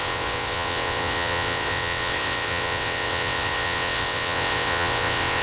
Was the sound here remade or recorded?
remade